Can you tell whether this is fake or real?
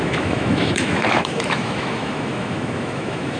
fake